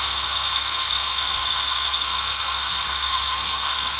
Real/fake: fake